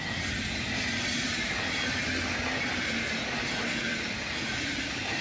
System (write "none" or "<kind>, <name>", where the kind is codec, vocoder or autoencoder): none